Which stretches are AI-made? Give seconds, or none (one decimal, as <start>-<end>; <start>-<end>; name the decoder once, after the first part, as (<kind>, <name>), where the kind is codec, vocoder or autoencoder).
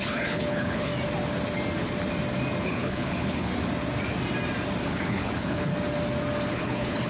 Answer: 0.0-0.9 (codec, HILCodec); 2.6-3.5; 4.8-5.7; 6.5-7.1